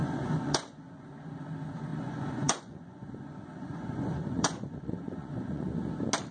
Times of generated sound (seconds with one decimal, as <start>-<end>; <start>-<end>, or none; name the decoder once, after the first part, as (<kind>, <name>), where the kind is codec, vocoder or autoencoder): 0.0-0.7 (vocoder, Vocos); 1.9-5.7